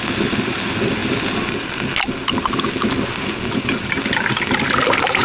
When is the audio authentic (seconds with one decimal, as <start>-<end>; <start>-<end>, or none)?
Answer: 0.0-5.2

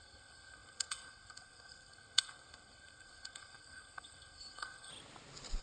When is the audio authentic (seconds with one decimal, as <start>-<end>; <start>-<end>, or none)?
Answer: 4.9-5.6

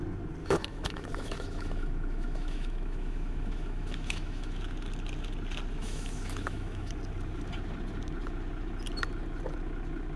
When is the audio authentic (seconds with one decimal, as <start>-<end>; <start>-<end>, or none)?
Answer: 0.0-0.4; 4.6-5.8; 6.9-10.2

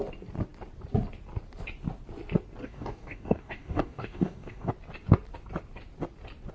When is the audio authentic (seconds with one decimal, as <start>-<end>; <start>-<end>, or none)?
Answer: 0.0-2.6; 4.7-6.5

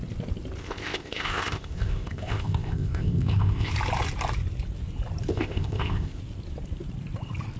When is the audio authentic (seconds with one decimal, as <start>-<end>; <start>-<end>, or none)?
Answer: 0.0-0.6; 3.7-5.3; 6.2-7.6

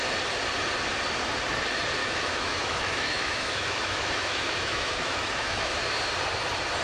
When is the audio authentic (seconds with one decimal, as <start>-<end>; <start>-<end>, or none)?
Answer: 0.0-2.0; 5.8-6.8

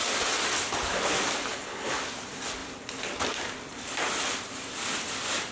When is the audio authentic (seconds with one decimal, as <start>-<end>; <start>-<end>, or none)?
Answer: 0.0-1.5; 2.0-5.5

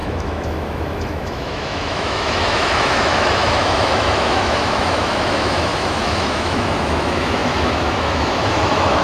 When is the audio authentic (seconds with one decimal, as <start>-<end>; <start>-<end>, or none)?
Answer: none